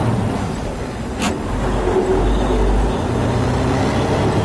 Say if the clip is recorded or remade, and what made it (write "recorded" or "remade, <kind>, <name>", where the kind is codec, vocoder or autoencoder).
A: recorded